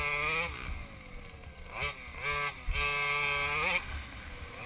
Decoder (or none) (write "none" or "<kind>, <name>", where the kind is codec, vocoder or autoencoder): none